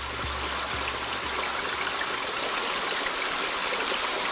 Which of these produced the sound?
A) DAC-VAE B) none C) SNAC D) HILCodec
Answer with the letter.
B